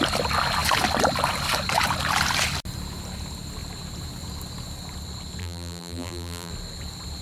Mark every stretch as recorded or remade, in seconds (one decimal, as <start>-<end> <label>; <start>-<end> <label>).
0.0-5.4 recorded; 5.4-6.5 remade; 6.5-7.2 recorded